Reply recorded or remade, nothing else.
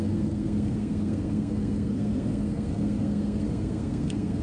remade